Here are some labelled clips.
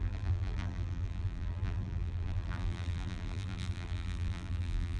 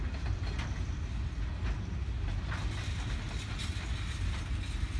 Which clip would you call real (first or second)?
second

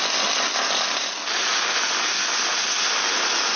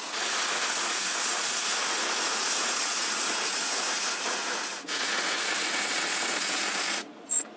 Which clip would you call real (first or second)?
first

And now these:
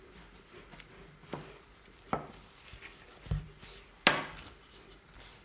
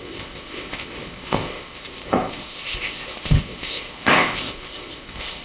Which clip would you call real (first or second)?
first